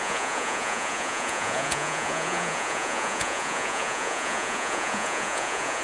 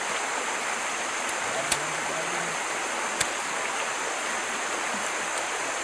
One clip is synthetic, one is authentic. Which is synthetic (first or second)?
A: first